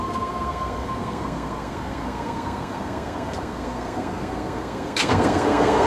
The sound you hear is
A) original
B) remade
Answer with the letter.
B